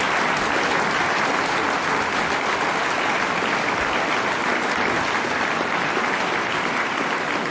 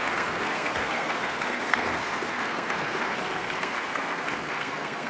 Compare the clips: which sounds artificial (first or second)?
second